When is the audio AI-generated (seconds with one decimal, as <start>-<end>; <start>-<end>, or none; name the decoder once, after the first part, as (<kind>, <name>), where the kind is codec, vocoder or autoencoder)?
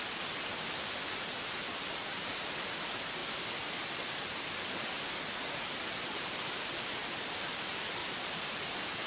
1.3-2.3 (vocoder, BigVGAN v2); 8.0-8.7